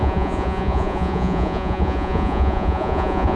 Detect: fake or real fake